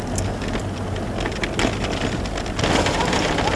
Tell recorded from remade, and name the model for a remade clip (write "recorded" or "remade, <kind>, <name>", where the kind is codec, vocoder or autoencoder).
recorded